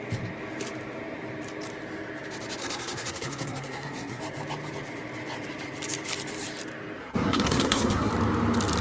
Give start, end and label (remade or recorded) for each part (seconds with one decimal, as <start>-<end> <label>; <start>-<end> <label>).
0.0-2.6 recorded; 2.6-4.2 remade; 4.2-7.0 recorded; 7.0-8.1 remade; 8.1-8.8 recorded